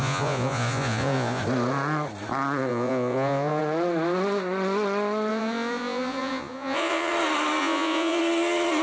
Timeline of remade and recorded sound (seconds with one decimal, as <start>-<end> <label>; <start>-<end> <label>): 0.0-1.4 remade; 1.4-2.7 recorded; 2.7-3.6 remade; 3.6-5.3 recorded; 5.3-7.1 remade; 7.1-7.6 recorded; 7.6-8.2 remade; 8.2-8.8 recorded